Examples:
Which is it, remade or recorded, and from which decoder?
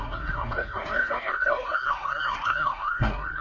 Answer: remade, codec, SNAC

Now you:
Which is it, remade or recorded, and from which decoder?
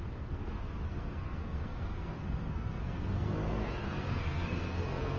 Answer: remade, codec, SNAC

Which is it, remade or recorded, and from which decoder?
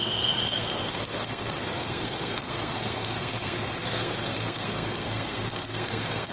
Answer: remade, codec, SNAC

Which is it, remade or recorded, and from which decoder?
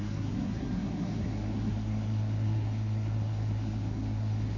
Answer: remade, codec, SNAC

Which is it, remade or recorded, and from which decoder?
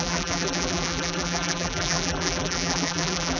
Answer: remade, vocoder, BigVGAN v2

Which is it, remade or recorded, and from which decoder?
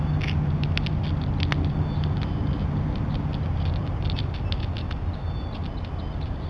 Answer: recorded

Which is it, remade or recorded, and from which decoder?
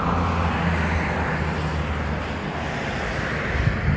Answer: recorded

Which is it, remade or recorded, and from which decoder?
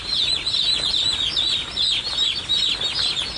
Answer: recorded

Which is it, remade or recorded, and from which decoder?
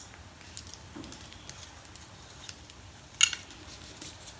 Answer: recorded